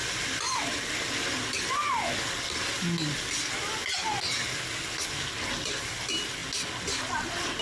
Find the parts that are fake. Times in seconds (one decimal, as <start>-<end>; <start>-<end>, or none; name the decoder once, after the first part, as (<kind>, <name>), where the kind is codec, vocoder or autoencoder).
none